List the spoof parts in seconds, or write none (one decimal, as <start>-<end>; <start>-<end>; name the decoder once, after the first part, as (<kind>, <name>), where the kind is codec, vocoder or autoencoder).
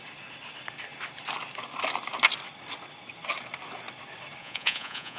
4.4-5.2 (vocoder, Vocos)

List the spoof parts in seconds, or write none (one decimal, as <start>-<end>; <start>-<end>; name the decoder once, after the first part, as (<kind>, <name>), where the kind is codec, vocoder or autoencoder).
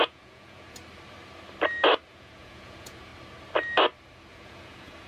0.0-0.8 (vocoder, Vocos); 2.1-3.1; 4.3-5.1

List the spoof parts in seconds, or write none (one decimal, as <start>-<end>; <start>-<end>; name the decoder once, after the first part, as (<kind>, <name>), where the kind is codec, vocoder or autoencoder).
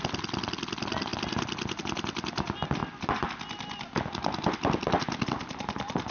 none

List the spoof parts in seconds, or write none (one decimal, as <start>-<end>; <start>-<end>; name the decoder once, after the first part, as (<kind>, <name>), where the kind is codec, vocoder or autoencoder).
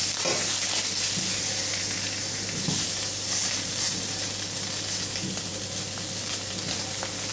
none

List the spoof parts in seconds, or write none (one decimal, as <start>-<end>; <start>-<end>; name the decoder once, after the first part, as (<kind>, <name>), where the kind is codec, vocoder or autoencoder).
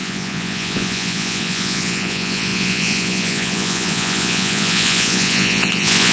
0.0-6.1 (vocoder, Vocos)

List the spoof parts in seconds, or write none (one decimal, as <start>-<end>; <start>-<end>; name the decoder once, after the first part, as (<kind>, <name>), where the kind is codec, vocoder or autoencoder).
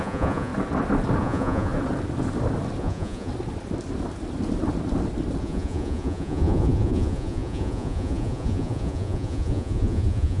0.0-0.5 (vocoder, Vocos); 1.2-1.7; 2.8-3.3; 5.4-10.4